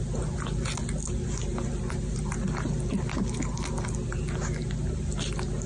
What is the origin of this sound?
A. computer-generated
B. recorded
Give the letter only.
B